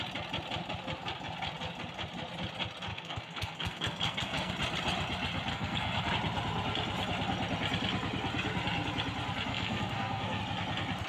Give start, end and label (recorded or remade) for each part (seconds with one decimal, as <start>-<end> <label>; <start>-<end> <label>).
0.0-2.9 recorded; 2.9-4.5 remade; 4.5-5.5 recorded; 5.5-6.1 remade; 6.1-9.5 recorded; 9.5-10.4 remade; 10.4-11.1 recorded